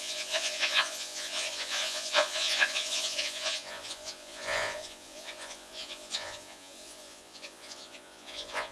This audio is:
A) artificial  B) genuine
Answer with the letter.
A